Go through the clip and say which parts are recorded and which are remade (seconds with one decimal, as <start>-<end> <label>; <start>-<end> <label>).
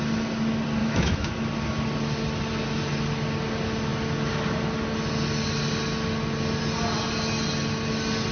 0.0-0.8 recorded; 0.8-1.3 remade; 1.3-8.3 recorded